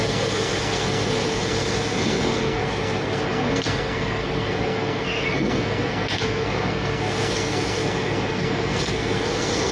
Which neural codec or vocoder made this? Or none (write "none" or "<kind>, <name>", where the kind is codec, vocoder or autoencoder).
codec, SNAC